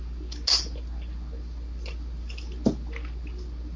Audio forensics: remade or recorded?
recorded